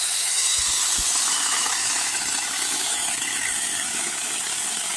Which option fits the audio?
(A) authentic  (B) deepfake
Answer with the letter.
B